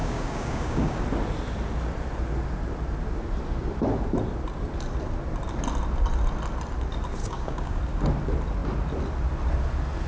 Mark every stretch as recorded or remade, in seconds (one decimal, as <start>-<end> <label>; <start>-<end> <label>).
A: 0.0-1.0 remade; 1.0-7.2 recorded; 7.2-7.8 remade; 7.8-10.1 recorded